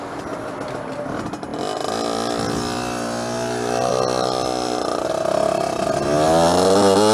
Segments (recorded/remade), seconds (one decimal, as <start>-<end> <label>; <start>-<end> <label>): 0.0-7.1 recorded